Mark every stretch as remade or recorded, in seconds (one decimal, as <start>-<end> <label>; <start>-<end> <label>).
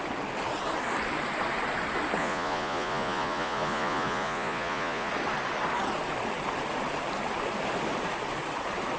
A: 0.0-2.2 recorded; 2.2-5.1 remade; 5.1-9.0 recorded